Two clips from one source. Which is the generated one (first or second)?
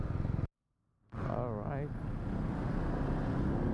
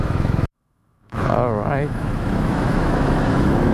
second